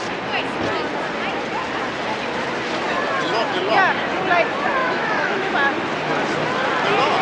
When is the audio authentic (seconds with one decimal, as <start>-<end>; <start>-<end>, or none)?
0.0-4.8; 5.5-7.2

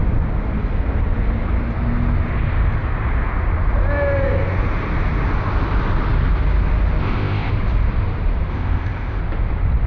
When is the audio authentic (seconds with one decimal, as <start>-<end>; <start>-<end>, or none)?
0.0-7.0; 7.5-8.5; 9.2-9.9

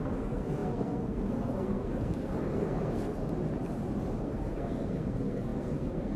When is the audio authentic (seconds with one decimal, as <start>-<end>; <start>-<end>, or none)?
3.2-4.2

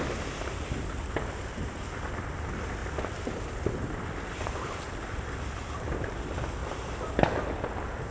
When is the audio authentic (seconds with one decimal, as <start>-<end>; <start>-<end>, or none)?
0.0-2.8; 5.7-6.6; 7.1-8.1